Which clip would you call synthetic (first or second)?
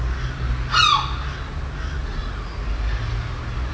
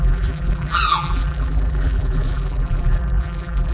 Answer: second